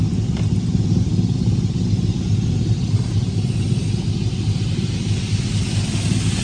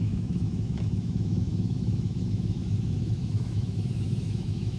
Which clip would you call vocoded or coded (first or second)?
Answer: second